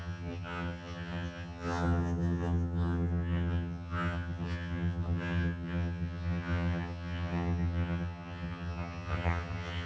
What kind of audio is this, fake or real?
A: fake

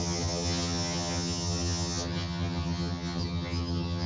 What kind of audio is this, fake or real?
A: fake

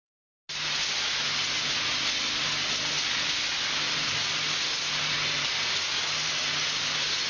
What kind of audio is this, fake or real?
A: real